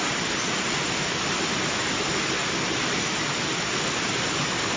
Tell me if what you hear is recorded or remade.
recorded